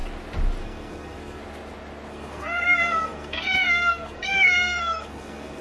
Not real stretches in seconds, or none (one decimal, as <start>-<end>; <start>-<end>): 0.6-1.4; 2.1-5.6